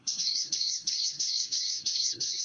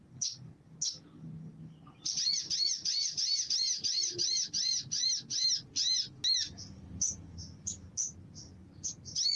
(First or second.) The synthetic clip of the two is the first